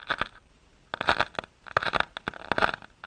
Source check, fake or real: real